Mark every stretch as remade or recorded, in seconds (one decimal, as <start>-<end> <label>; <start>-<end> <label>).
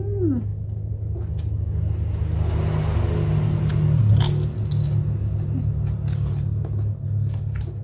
0.0-7.8 recorded